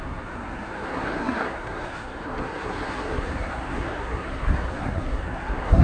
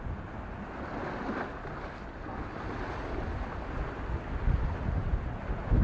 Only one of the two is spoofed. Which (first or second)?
first